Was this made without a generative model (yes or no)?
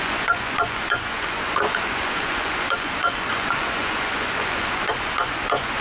no